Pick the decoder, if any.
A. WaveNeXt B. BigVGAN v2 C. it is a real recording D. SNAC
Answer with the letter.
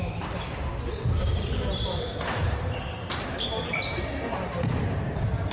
B